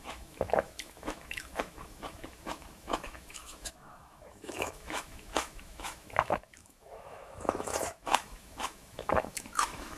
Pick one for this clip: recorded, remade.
remade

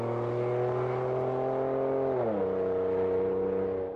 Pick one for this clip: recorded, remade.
recorded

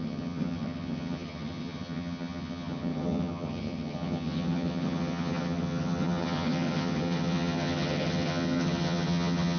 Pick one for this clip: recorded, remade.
remade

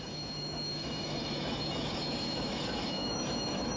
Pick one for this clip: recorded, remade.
remade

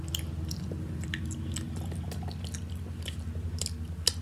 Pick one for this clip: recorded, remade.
recorded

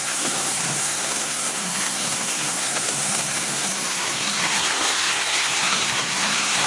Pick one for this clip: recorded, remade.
remade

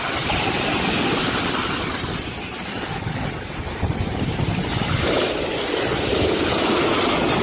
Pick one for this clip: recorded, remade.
remade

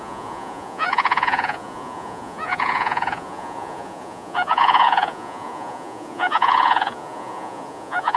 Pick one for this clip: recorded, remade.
remade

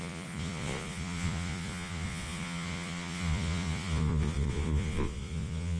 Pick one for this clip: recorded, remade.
remade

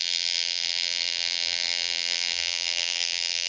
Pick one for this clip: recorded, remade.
remade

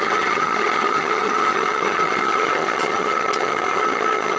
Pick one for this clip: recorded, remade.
remade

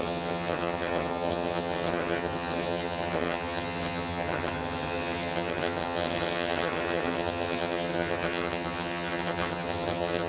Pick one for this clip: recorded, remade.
remade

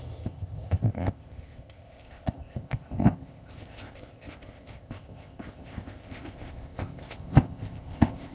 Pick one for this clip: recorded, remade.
remade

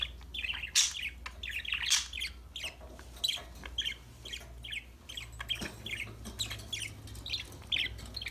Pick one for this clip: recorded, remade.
recorded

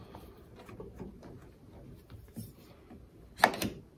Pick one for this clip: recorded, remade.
recorded